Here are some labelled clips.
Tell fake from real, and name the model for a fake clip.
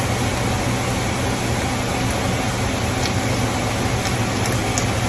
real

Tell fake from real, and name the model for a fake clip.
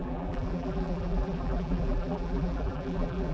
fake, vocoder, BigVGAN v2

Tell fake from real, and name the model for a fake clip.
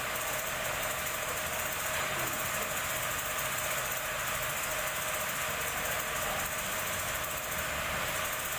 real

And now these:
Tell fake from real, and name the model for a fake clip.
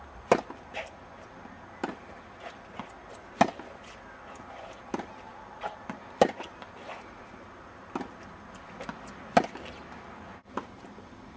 real